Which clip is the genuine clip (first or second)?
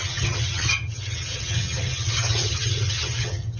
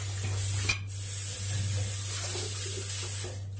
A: second